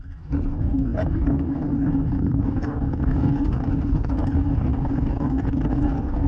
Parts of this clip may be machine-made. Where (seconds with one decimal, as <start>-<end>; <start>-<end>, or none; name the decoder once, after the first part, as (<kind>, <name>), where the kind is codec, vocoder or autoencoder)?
0.0-6.3 (codec, DAC)